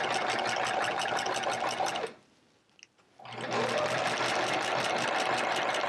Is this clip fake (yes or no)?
no